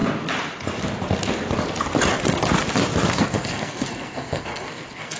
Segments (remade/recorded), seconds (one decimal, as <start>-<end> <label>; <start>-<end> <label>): 0.0-3.1 recorded; 3.1-5.2 remade

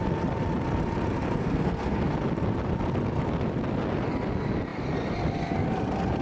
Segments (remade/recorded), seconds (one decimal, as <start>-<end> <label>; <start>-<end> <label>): 0.0-1.4 recorded; 1.4-2.1 remade; 2.1-6.2 recorded

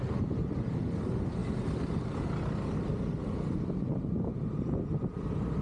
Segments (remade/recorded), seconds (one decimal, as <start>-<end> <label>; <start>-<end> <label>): 0.0-5.6 recorded

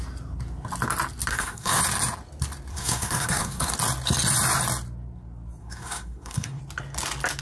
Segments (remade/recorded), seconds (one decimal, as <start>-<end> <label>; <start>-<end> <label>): 0.0-1.3 recorded; 1.3-1.8 remade; 1.8-2.7 recorded; 2.7-3.7 remade; 3.7-5.6 recorded; 5.6-6.6 remade; 6.6-7.4 recorded